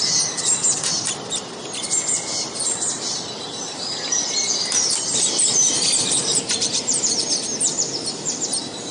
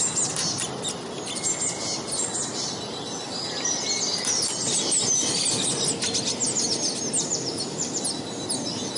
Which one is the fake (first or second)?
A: first